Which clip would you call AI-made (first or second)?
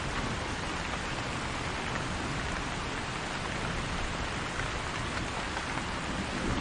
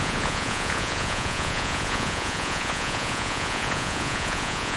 second